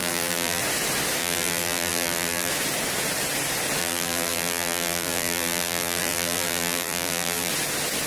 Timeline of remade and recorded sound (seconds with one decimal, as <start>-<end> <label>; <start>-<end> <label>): 0.0-0.6 remade; 0.6-1.2 recorded; 1.2-2.5 remade; 2.5-3.8 recorded; 3.8-7.5 remade; 7.5-8.1 recorded